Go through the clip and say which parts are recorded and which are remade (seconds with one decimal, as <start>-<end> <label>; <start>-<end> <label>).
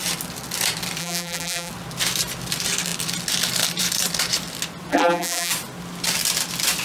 0.0-1.0 recorded; 1.0-1.7 remade; 1.7-4.9 recorded; 4.9-5.5 remade; 5.5-6.8 recorded